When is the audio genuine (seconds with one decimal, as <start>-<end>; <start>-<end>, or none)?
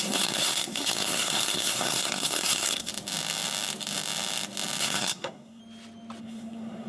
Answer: 2.9-4.8; 5.6-6.2